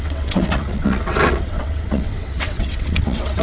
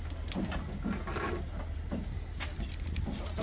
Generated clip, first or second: first